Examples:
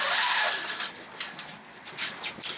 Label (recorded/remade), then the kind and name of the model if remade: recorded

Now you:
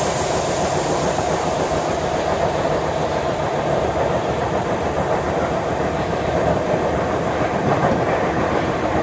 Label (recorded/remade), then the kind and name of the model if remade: recorded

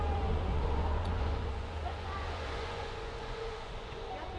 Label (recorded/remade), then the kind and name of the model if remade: remade, vocoder, Vocos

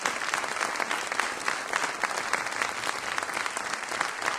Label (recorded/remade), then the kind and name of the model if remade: recorded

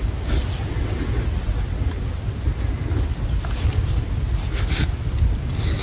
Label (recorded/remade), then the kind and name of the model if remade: recorded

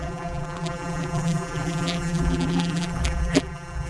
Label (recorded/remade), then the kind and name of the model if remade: remade, vocoder, BigVGAN v2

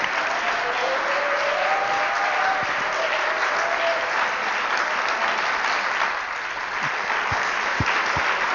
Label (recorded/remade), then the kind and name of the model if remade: recorded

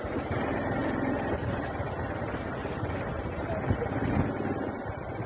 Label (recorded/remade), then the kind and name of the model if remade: remade, vocoder, BigVGAN v2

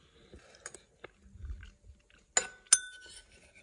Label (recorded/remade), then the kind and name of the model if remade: recorded